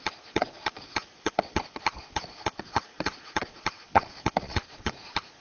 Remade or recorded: remade